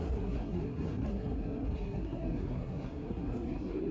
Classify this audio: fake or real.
fake